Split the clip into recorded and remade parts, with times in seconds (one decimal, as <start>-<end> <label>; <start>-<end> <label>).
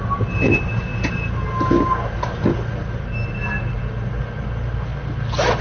0.0-5.6 recorded